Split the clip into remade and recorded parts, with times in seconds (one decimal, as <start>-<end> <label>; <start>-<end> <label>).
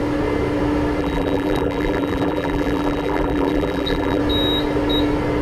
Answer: 0.0-1.0 recorded; 1.0-4.2 remade; 4.2-5.4 recorded